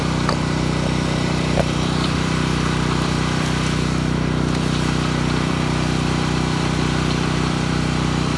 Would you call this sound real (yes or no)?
no